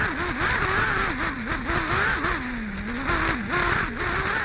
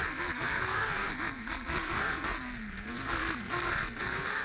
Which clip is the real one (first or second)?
first